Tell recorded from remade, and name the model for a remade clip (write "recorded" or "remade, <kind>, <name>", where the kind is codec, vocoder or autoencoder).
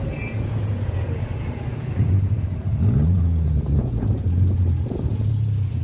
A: remade, vocoder, Vocos